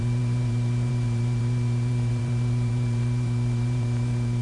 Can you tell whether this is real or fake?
fake